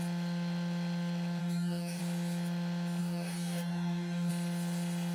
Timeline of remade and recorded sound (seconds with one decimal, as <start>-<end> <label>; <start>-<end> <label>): 0.0-1.4 recorded; 1.4-2.0 remade; 2.0-3.0 recorded; 3.0-4.3 remade; 4.3-5.1 recorded